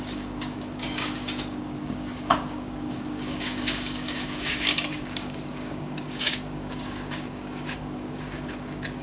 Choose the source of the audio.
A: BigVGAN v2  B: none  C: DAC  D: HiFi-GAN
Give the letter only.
C